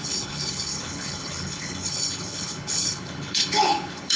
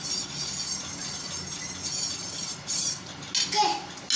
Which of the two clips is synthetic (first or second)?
first